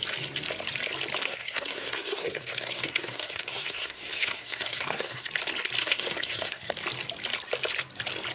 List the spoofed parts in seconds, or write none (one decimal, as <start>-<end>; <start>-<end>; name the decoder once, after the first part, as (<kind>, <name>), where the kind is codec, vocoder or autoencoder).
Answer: 1.2-5.3 (codec, SNAC); 5.8-6.7